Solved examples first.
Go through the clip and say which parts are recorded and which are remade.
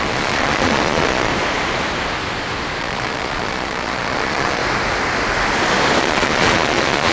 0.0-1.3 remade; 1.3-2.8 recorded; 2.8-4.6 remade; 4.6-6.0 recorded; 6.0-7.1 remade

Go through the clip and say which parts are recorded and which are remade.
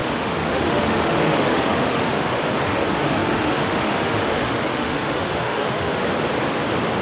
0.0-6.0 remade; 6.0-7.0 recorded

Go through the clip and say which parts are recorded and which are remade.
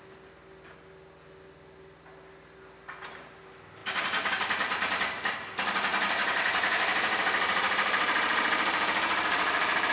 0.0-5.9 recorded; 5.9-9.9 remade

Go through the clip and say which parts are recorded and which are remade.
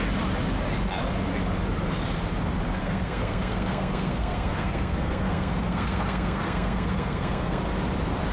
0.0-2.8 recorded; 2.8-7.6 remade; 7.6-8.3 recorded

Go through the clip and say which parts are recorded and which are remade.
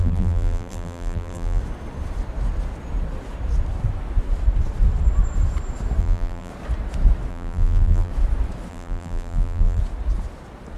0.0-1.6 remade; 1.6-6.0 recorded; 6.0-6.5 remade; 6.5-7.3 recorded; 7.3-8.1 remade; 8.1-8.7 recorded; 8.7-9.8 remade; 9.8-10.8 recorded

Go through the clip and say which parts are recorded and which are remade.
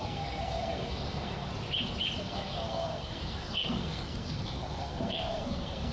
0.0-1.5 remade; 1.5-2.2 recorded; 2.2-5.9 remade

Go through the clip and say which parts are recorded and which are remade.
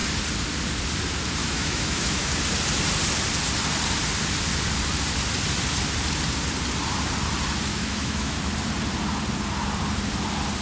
0.0-1.4 recorded; 1.4-2.4 remade; 2.4-7.7 recorded; 7.7-8.4 remade; 8.4-10.6 recorded